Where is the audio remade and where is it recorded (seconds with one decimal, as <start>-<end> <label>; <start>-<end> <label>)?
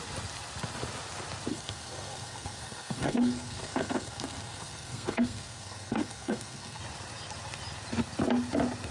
0.0-1.5 recorded; 1.5-6.8 remade; 6.8-8.9 recorded